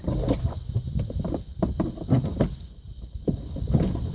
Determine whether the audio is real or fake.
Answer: real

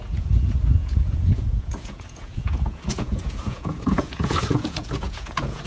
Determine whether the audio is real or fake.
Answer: fake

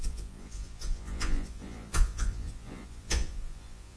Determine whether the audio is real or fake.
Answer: fake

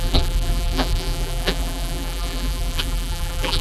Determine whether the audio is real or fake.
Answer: fake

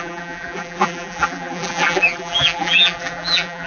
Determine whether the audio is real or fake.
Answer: fake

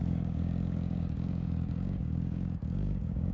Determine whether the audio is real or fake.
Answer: fake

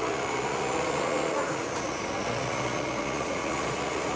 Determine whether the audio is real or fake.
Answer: fake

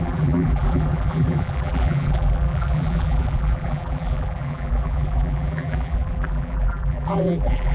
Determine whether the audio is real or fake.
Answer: fake